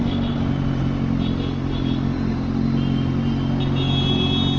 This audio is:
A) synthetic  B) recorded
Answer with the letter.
B